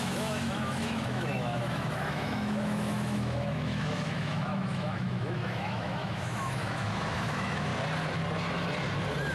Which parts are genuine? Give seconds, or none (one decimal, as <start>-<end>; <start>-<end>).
7.7-9.3